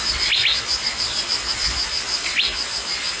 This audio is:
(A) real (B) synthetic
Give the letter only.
A